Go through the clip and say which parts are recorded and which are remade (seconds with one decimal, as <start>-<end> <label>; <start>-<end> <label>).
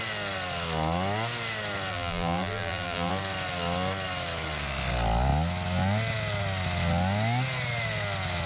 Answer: 0.0-1.9 recorded; 1.9-3.1 remade; 3.1-8.5 recorded